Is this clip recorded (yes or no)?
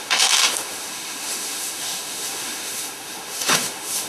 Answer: no